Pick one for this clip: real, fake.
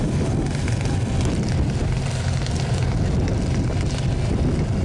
real